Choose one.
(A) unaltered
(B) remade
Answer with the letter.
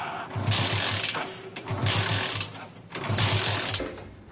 A